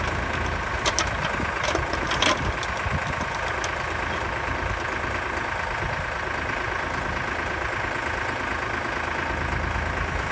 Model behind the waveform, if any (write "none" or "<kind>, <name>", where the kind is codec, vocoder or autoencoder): none